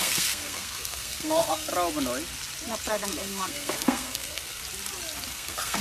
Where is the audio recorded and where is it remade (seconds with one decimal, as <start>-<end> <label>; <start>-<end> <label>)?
0.0-1.7 remade; 1.7-2.9 recorded; 2.9-4.6 remade; 4.6-5.3 recorded; 5.3-5.8 remade